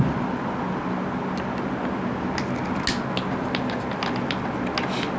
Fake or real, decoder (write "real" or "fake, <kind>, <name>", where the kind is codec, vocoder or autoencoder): real